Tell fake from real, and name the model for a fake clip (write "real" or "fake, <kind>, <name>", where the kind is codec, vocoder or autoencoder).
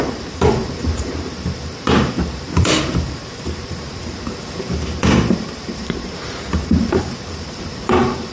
fake, vocoder, BigVGAN v2